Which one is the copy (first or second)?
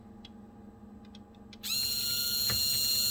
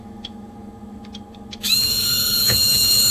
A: second